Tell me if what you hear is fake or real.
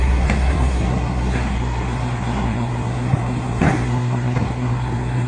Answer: fake